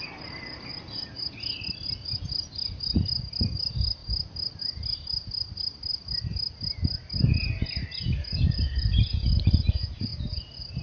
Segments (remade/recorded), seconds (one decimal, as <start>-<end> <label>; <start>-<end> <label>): 0.0-10.8 recorded